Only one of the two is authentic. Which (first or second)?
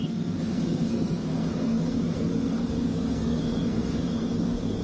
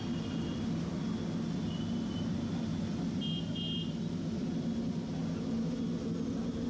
second